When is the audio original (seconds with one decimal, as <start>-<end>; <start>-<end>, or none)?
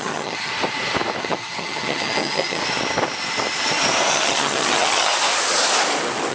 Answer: 0.5-1.2; 2.6-4.1; 5.1-6.3